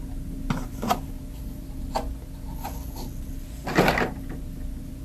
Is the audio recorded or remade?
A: recorded